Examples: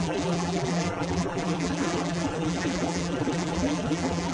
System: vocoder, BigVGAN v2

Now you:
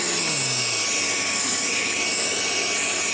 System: none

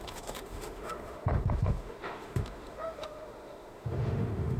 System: autoencoder, DAC-VAE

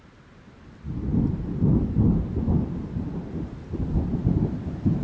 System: none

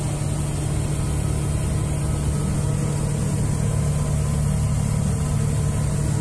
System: none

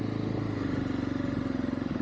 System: none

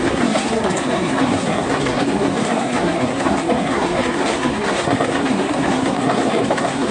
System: codec, SNAC